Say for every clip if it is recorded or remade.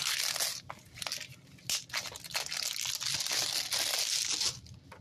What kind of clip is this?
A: recorded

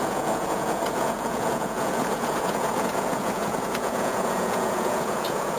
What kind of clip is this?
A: remade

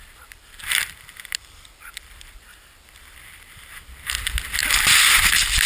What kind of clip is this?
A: recorded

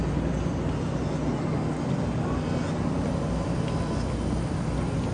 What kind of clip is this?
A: recorded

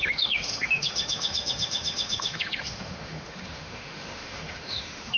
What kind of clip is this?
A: remade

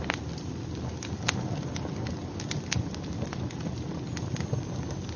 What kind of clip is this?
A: recorded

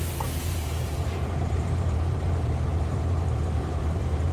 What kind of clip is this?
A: remade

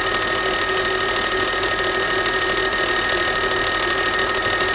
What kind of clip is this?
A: recorded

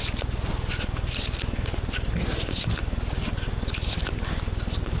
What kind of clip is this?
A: recorded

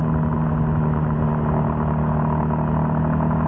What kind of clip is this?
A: recorded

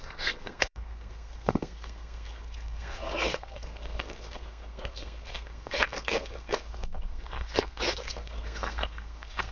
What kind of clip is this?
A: remade